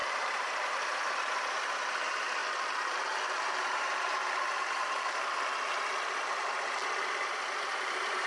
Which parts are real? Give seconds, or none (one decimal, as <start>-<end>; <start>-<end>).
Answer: 2.4-3.7; 4.2-7.6